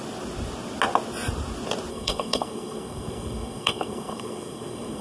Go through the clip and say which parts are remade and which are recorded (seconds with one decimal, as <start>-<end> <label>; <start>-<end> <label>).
0.0-1.9 recorded; 1.9-5.0 remade